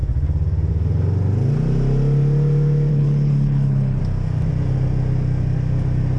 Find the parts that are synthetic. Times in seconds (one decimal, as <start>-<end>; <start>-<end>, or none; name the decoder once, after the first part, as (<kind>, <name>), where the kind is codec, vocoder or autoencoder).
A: 2.9-4.0 (codec, HILCodec)